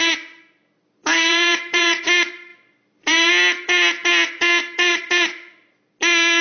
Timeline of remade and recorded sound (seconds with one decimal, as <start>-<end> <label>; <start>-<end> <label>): 0.0-1.0 recorded; 1.0-2.0 remade; 2.0-2.5 recorded; 2.5-3.3 remade; 3.3-4.6 recorded; 4.6-5.1 remade; 5.1-6.4 recorded